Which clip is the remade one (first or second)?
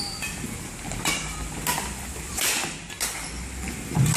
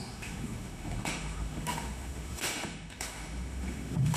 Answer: second